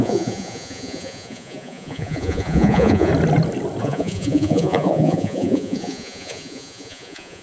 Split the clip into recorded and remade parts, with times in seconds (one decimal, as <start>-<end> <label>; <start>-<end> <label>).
0.0-3.1 remade; 3.1-3.8 recorded; 3.8-7.4 remade